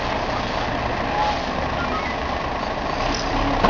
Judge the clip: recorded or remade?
recorded